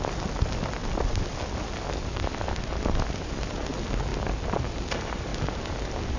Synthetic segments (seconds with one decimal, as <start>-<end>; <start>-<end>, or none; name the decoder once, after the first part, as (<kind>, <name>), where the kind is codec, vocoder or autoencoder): 0.8-2.9 (vocoder, BigVGAN v2); 5.3-6.2